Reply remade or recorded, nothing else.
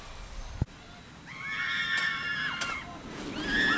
recorded